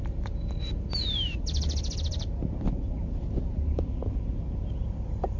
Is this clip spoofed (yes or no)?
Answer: no